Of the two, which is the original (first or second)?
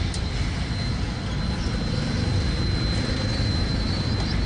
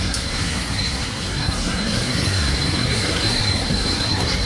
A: first